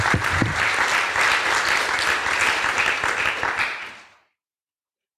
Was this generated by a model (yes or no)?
no